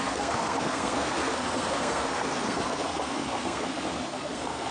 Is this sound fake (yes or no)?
yes